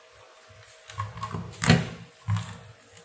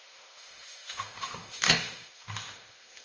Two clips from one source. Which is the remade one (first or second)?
second